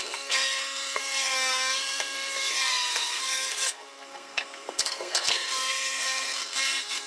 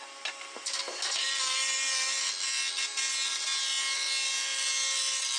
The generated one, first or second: first